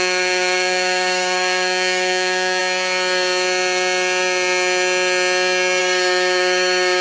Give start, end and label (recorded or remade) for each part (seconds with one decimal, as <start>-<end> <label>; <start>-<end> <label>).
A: 0.0-2.6 remade; 2.6-5.8 recorded; 5.8-7.0 remade